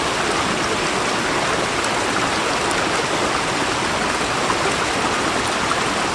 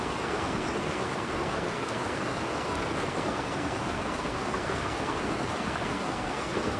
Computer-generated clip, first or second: second